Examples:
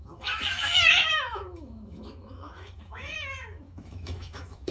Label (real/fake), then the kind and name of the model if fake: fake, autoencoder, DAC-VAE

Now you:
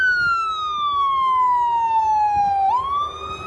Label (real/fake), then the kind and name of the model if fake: real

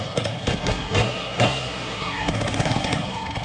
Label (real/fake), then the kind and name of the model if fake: fake, codec, SNAC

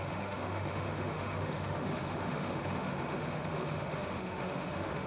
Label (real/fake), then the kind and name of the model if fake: fake, autoencoder, DAC-VAE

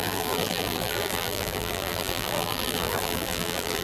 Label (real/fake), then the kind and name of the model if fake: fake, vocoder, BigVGAN v2